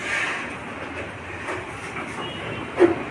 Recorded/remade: recorded